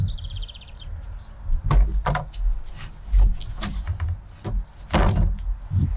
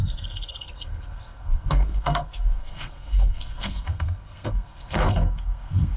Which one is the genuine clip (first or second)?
first